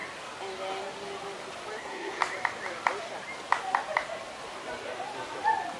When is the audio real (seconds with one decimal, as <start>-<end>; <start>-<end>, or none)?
0.0-1.8; 2.2-5.8